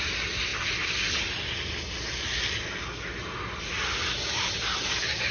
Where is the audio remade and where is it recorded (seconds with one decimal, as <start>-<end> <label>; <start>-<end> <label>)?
0.0-5.3 recorded